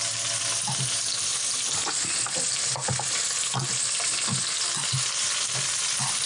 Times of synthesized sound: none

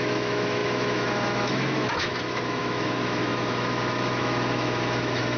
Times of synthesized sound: 0.0-5.4 (autoencoder, DAC-VAE)

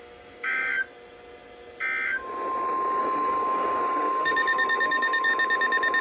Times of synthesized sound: 0.0-0.7 (codec, DAC); 3.0-5.3

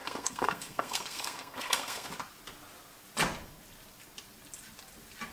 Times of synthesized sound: 0.0-2.1 (codec, SNAC)